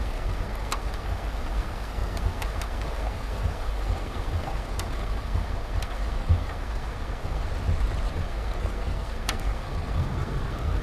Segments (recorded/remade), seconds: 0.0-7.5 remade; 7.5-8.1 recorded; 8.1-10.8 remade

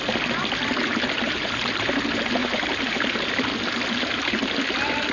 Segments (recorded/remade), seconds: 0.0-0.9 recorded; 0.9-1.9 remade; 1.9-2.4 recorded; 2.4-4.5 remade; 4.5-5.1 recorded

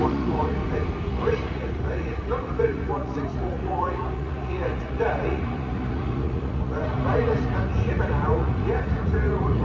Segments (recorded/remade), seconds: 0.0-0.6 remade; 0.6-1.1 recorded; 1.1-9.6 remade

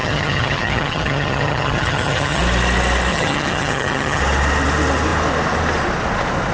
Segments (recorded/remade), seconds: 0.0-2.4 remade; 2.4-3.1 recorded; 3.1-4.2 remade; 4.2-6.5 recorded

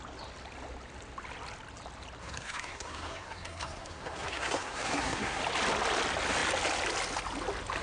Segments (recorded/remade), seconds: 0.0-2.2 recorded; 2.2-5.4 remade; 5.4-7.8 recorded